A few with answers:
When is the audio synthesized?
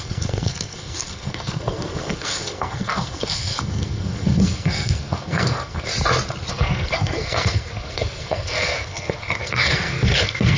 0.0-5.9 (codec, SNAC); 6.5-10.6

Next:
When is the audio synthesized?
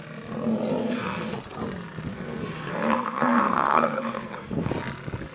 0.8-1.4 (codec, SNAC); 2.1-4.7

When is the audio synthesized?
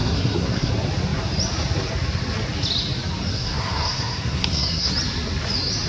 0.0-0.7 (codec, SNAC); 3.3-4.9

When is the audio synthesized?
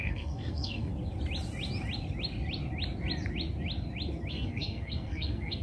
0.0-0.9 (codec, SNAC); 4.3-5.6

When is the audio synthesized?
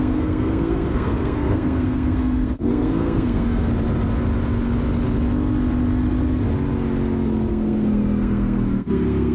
0.0-3.7 (codec, SNAC); 7.5-9.3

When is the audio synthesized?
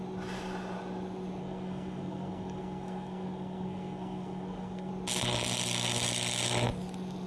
1.4-4.9 (codec, SNAC)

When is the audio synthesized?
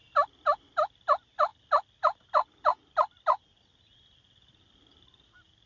none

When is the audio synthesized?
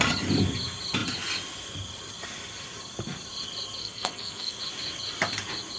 3.8-4.6 (codec, SNAC)